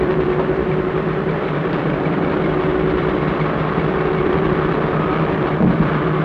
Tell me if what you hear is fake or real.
fake